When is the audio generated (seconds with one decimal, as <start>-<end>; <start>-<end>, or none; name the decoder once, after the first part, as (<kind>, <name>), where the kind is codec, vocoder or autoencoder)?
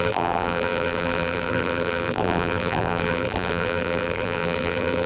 0.0-5.1 (vocoder, BigVGAN v2)